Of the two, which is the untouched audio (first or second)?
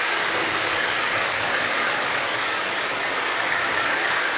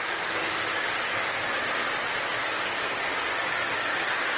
second